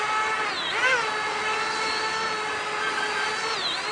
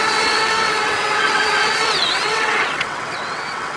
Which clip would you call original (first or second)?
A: first